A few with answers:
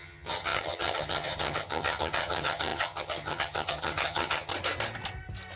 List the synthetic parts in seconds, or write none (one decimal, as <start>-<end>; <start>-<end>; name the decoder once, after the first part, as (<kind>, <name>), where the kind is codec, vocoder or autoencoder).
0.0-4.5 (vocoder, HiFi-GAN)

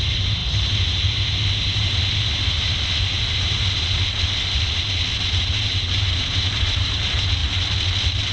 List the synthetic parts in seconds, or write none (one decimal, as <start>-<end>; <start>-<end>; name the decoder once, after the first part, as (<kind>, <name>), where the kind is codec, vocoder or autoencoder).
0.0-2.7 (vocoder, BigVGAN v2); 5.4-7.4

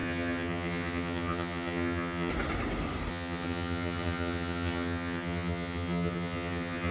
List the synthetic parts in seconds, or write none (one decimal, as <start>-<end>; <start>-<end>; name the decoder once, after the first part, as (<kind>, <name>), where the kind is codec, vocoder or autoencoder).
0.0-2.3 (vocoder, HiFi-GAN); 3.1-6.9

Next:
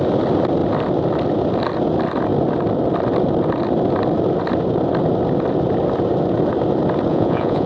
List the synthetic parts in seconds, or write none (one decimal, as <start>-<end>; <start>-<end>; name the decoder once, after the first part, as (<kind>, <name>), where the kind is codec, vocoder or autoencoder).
7.1-7.7 (vocoder, Vocos)